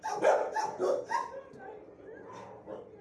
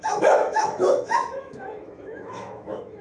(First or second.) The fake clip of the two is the second